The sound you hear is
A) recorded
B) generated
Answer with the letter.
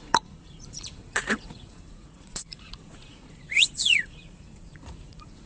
B